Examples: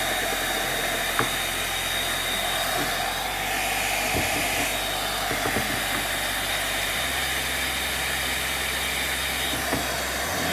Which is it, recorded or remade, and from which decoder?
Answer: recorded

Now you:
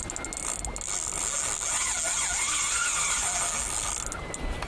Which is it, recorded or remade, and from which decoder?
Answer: recorded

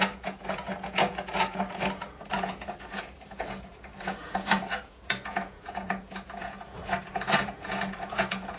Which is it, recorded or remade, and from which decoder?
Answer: remade, vocoder, Vocos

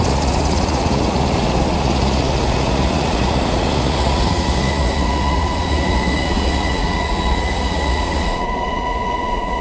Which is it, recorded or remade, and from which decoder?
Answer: remade, vocoder, Vocos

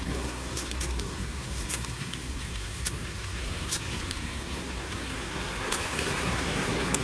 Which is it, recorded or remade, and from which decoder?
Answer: remade, codec, SNAC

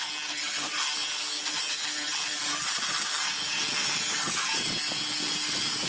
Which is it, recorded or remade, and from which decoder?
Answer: recorded